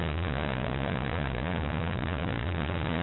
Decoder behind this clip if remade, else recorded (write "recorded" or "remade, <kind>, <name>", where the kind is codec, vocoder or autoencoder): remade, vocoder, Vocos